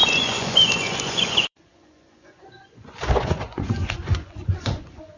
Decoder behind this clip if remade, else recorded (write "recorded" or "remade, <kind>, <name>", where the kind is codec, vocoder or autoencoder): remade, vocoder, Vocos